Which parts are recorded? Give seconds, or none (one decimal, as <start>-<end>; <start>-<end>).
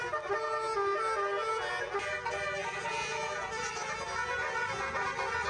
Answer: 0.0-5.5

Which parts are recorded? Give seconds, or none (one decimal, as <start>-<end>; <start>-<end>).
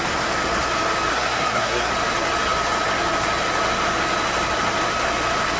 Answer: 0.0-1.1; 1.9-5.6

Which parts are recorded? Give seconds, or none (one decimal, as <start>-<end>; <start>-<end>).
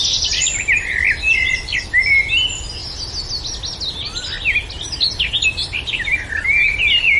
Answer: 0.0-7.2